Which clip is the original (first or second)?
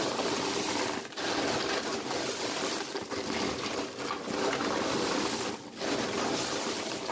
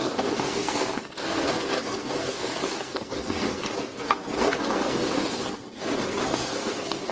first